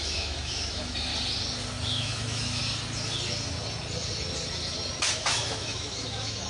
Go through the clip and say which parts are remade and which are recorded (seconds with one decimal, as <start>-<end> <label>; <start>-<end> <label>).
0.0-1.1 remade; 1.1-1.9 recorded; 1.9-2.6 remade; 2.6-5.2 recorded; 5.2-6.5 remade